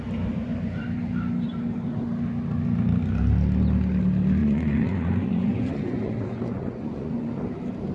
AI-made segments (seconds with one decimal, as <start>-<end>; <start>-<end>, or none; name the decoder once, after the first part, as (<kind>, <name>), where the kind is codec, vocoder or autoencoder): 4.4-7.4 (vocoder, Vocos)